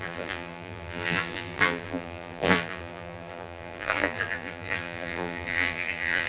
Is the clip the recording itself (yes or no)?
no